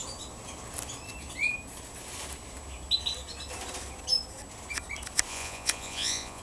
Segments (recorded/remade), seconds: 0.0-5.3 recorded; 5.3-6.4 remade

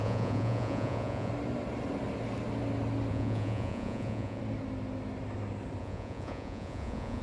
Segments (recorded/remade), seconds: 0.0-1.3 remade; 1.3-3.1 recorded; 3.1-4.4 remade; 4.4-5.8 recorded; 5.8-7.2 remade

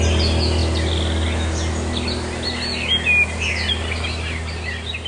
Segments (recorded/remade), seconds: 0.0-5.1 recorded

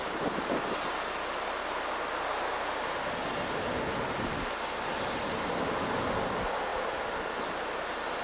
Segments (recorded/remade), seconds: 0.0-8.2 recorded